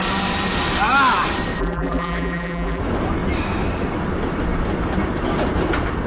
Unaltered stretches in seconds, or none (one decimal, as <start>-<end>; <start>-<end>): 0.0-1.6; 2.8-6.1